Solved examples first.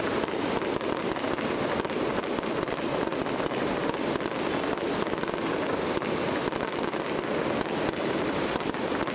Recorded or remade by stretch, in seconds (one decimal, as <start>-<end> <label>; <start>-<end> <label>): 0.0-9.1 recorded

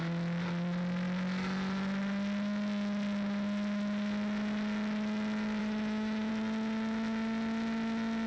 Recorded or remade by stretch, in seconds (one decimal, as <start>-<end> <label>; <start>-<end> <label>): 0.0-5.6 recorded; 5.6-6.3 remade; 6.3-8.3 recorded

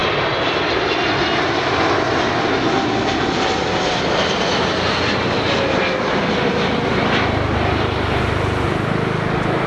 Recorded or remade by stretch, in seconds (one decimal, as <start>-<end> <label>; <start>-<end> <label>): 0.0-9.7 recorded

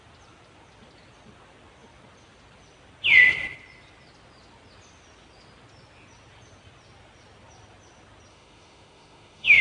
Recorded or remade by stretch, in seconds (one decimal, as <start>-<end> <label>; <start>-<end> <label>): 0.0-8.3 recorded; 8.3-9.6 remade

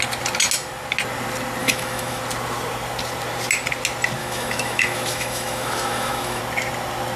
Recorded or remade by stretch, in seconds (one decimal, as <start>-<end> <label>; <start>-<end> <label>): 0.0-1.6 recorded; 1.6-2.2 remade; 2.2-4.2 recorded; 4.2-6.4 remade; 6.4-7.2 recorded

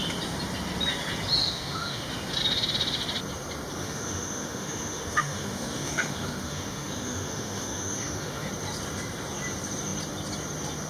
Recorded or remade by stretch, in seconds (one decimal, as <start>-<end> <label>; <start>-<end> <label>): 0.0-1.4 recorded; 1.4-2.1 remade; 2.1-3.8 recorded; 3.8-8.5 remade; 8.5-10.9 recorded

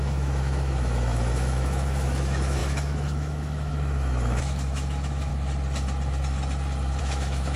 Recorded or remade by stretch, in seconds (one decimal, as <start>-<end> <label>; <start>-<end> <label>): 0.0-5.3 remade; 5.3-7.0 recorded; 7.0-7.6 remade

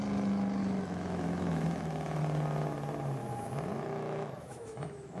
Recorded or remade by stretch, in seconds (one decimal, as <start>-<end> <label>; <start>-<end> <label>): 0.0-0.6 recorded; 0.6-2.2 remade; 2.2-3.2 recorded; 3.2-5.2 remade